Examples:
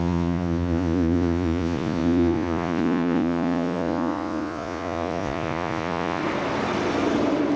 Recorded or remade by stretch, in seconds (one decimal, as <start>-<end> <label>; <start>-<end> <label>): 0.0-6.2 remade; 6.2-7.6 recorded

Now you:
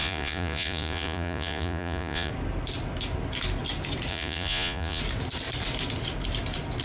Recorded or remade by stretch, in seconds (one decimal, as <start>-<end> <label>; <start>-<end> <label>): 0.0-2.3 remade; 2.3-4.1 recorded; 4.1-5.0 remade; 5.0-6.8 recorded

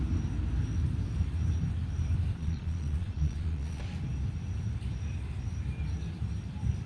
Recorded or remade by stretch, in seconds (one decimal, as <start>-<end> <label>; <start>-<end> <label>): 0.0-2.4 recorded; 2.4-3.8 remade; 3.8-6.9 recorded

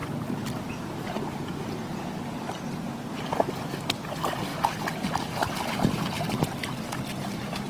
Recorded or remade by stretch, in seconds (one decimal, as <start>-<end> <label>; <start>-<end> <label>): 0.0-7.7 recorded

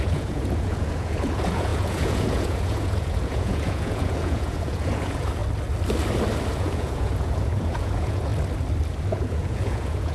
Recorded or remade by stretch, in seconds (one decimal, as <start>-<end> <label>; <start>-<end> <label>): 0.0-5.4 remade; 5.4-6.5 recorded; 6.5-8.3 remade; 8.3-9.1 recorded; 9.1-10.1 remade

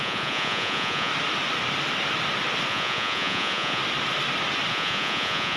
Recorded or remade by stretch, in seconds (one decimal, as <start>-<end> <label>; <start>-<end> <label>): 0.0-1.1 remade; 1.1-2.7 recorded; 2.7-3.8 remade; 3.8-4.7 recorded; 4.7-5.6 remade